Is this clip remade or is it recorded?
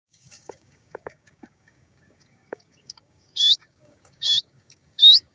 remade